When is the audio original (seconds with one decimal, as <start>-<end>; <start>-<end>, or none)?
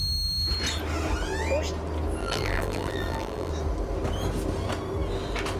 0.0-2.2; 3.5-5.6